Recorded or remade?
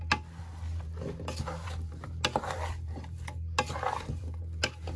recorded